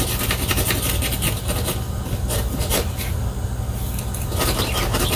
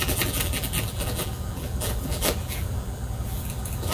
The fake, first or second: second